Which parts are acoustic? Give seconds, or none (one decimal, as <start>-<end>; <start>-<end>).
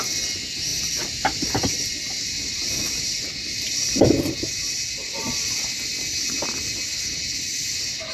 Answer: 0.0-0.7; 5.4-8.1